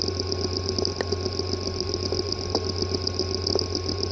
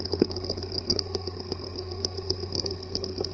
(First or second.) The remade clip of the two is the second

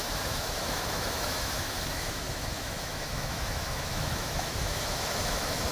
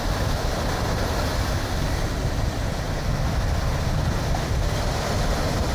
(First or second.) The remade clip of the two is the first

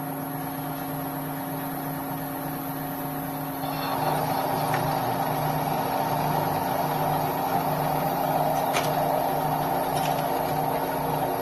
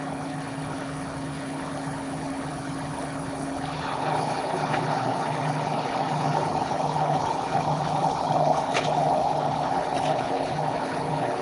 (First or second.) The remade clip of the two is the second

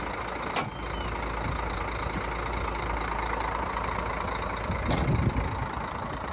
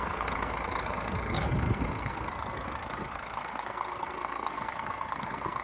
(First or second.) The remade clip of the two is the second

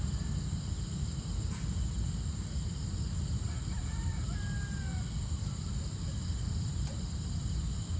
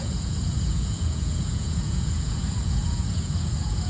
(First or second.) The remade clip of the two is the second